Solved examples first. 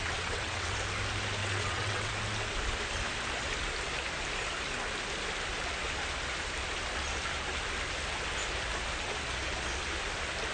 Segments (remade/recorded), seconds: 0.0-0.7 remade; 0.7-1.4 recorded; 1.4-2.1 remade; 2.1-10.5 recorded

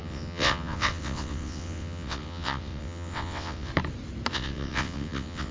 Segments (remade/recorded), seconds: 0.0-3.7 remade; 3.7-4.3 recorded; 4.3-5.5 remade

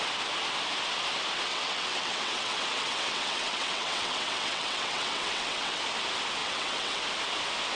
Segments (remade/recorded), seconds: 0.0-1.5 recorded; 1.5-5.8 remade; 5.8-6.4 recorded; 6.4-7.0 remade; 7.0-7.8 recorded

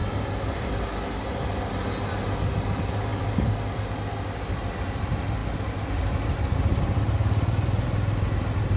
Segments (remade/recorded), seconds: 0.0-8.8 recorded

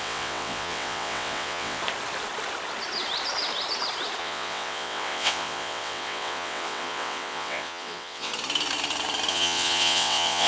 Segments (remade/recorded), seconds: 0.0-1.8 remade; 1.8-4.2 recorded; 4.2-8.3 remade; 8.3-9.3 recorded; 9.3-10.5 remade

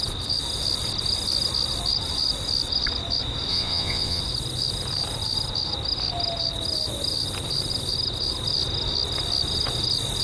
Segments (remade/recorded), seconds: 0.0-3.5 recorded; 3.5-4.2 remade; 4.2-10.2 recorded

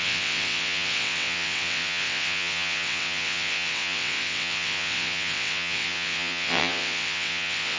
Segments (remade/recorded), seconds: 0.0-7.8 remade

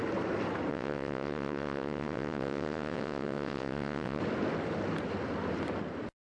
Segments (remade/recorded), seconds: 0.0-0.7 recorded; 0.7-4.2 remade; 4.2-6.3 recorded